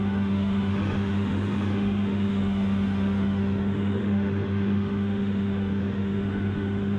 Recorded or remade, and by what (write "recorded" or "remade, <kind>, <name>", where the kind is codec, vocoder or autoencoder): remade, autoencoder, DAC-VAE